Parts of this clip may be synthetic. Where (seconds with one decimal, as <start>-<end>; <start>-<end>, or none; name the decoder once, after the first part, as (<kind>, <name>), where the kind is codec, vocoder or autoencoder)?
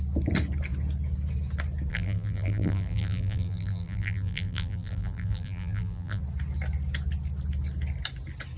1.9-6.2 (vocoder, BigVGAN v2)